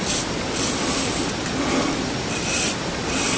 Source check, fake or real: real